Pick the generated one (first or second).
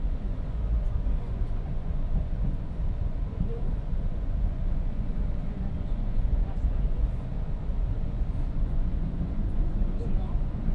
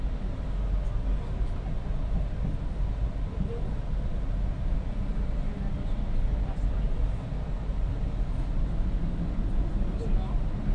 first